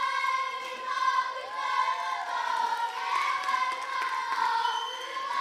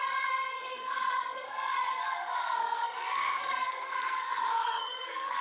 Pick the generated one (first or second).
second